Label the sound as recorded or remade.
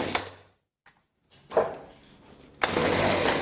recorded